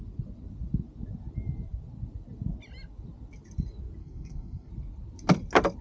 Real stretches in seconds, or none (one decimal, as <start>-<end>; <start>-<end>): 0.0-4.0; 4.7-5.8